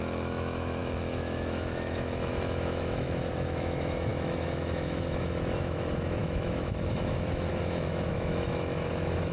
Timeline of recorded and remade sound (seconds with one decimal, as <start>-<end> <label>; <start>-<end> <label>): 0.0-9.3 remade